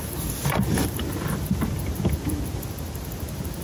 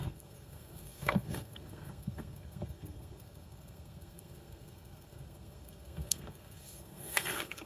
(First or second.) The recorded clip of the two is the first